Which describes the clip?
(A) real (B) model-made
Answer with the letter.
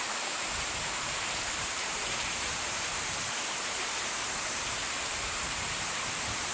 B